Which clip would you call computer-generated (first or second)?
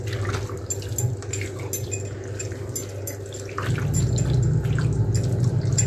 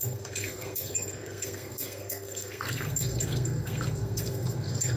second